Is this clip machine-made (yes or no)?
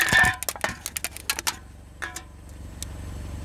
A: no